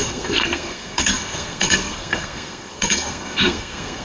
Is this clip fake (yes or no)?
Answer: yes